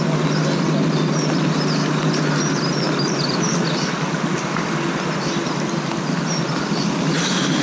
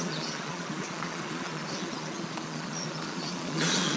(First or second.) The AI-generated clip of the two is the second